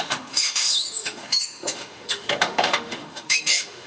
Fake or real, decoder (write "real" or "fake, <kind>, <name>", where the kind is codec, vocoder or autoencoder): fake, autoencoder, DAC-VAE